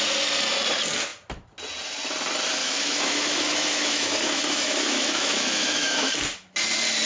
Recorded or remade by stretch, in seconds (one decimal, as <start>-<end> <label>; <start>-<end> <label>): 0.0-2.6 recorded; 2.6-6.1 remade; 6.1-7.1 recorded